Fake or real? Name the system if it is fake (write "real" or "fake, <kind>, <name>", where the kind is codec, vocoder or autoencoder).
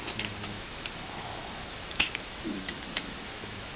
fake, autoencoder, DAC-VAE